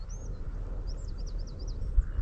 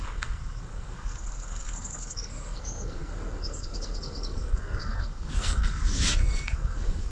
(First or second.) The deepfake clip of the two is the second